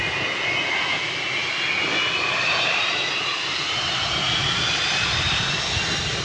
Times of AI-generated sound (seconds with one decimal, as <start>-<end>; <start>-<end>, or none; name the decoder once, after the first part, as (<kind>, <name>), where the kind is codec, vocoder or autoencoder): none